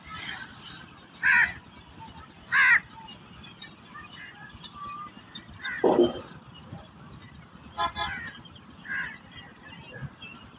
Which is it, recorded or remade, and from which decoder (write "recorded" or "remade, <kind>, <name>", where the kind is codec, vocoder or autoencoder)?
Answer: recorded